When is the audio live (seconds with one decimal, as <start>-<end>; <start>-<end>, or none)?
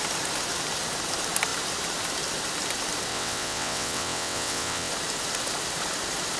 0.0-3.1; 4.9-6.4